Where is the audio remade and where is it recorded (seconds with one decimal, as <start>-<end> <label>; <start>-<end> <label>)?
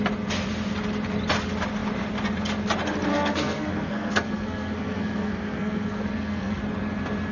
0.0-3.1 recorded; 3.1-6.6 remade; 6.6-7.3 recorded